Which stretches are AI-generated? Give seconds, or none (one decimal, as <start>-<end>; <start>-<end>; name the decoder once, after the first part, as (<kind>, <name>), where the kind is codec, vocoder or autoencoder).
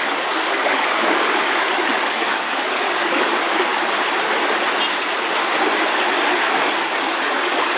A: 0.0-3.7 (codec, DAC); 6.8-7.8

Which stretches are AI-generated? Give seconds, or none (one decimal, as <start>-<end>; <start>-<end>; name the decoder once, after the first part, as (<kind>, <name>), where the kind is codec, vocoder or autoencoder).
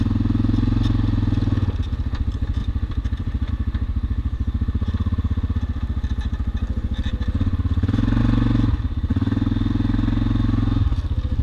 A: 2.6-3.5 (vocoder, BigVGAN v2)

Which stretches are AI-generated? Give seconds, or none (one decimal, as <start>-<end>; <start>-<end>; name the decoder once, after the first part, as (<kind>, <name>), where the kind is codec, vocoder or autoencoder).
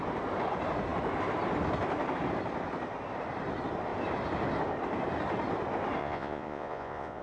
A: 6.0-7.2 (vocoder, Vocos)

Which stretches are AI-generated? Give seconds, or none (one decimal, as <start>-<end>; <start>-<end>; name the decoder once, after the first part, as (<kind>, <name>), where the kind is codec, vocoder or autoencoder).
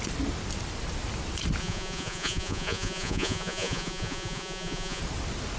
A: 1.6-5.0 (vocoder, Vocos)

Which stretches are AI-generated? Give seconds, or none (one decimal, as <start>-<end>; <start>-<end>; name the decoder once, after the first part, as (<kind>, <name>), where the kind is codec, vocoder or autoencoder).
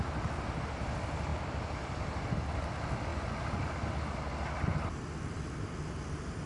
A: none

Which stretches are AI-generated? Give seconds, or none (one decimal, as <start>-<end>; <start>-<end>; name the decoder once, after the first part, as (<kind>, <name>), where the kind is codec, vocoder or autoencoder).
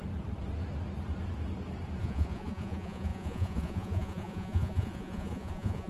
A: 2.0-5.9 (vocoder, Vocos)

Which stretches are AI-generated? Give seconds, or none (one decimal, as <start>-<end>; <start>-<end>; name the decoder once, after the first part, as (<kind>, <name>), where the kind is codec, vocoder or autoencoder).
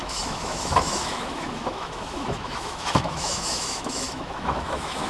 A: 0.0-5.1 (autoencoder, DAC-VAE)